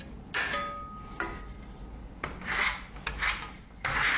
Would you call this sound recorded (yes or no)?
yes